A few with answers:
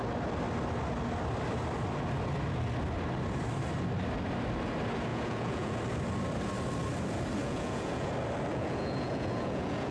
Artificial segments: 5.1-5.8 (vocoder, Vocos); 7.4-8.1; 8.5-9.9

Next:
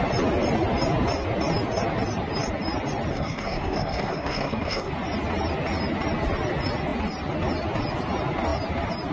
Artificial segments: 3.1-4.9 (codec, SNAC)

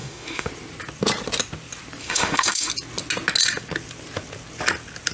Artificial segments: 0.0-0.5 (autoencoder, DAC-VAE); 2.0-2.7

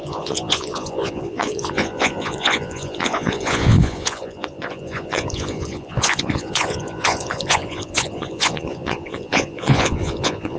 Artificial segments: 0.0-10.6 (vocoder, Vocos)

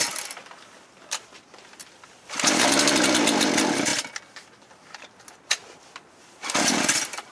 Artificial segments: 0.0-3.9 (vocoder, BigVGAN v2); 4.7-7.3

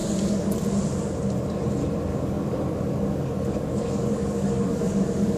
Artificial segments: 2.1-5.4 (codec, DAC)

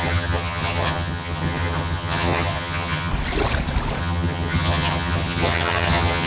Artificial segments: 0.0-3.1 (vocoder, HiFi-GAN); 4.0-6.3